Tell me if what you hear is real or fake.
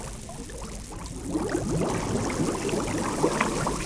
real